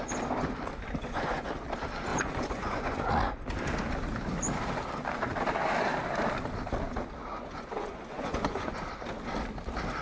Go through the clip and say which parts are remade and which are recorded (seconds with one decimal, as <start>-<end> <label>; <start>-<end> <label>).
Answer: 0.0-1.0 recorded; 1.0-1.5 remade; 1.5-2.1 recorded; 2.1-3.1 remade; 3.1-7.3 recorded; 7.3-8.8 remade; 8.8-10.0 recorded